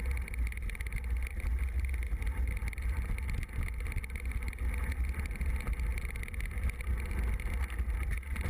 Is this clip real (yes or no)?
yes